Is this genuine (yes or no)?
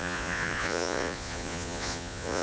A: no